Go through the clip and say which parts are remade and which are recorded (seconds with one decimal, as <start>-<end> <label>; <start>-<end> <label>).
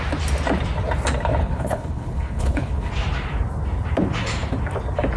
0.0-1.4 recorded; 1.4-2.9 remade; 2.9-5.2 recorded